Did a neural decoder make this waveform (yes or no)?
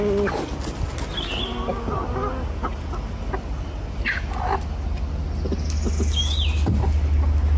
no